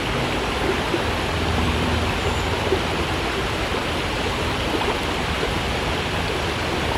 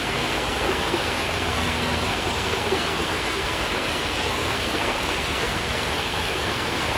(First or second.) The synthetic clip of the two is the second